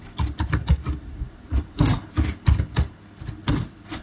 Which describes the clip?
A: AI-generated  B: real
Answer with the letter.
B